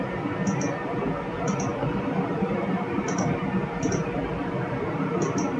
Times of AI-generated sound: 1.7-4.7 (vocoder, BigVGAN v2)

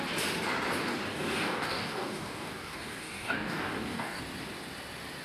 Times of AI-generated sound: 1.1-4.2 (codec, DAC)